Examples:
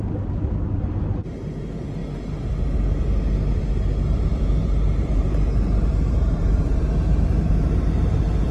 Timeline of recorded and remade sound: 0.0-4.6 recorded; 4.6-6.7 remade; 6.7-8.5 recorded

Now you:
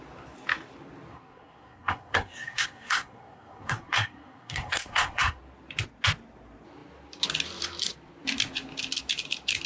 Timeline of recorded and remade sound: 0.0-1.1 recorded; 1.1-5.4 remade; 5.4-9.7 recorded

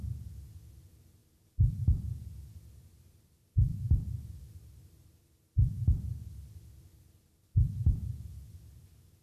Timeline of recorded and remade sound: 0.0-9.2 recorded

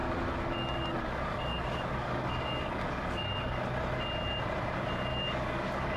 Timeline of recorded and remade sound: 0.0-3.6 remade; 3.6-5.1 recorded; 5.1-6.0 remade

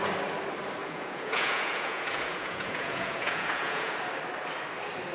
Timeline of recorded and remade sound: 0.0-0.8 recorded; 0.8-3.9 remade; 3.9-5.1 recorded

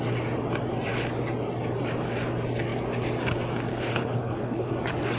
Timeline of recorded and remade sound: 0.0-3.7 recorded; 3.7-4.7 remade; 4.7-5.2 recorded

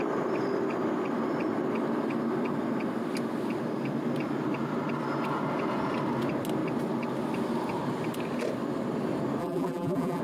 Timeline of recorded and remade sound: 0.0-9.4 recorded; 9.4-10.2 remade

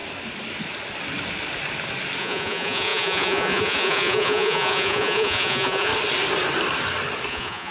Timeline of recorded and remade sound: 0.0-2.2 recorded; 2.2-5.9 remade; 5.9-7.3 recorded; 7.3-7.7 remade